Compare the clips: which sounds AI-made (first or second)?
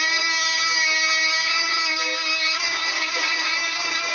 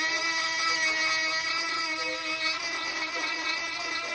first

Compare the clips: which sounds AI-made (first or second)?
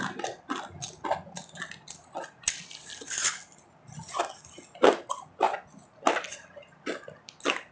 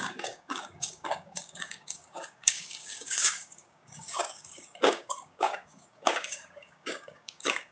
second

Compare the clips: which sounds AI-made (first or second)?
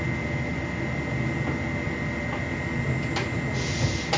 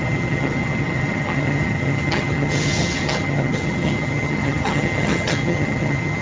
second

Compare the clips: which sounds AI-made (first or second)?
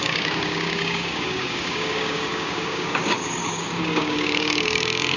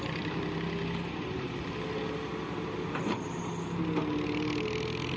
first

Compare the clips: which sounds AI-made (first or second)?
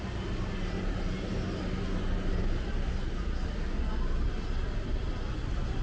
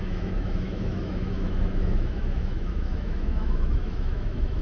second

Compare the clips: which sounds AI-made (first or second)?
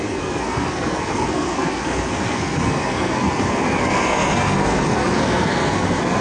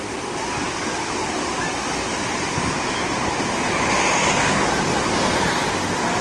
first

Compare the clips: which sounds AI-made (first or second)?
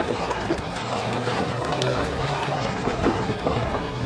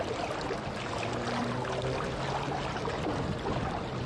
first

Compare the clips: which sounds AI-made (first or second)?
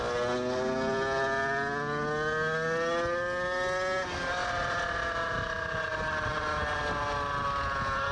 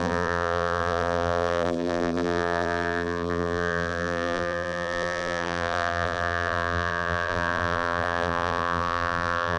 second